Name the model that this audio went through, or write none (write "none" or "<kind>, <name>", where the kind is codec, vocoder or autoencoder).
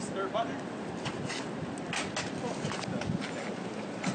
none